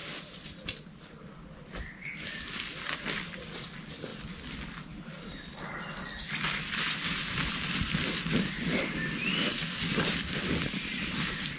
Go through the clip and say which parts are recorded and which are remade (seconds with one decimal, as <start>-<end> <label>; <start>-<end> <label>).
0.0-11.6 recorded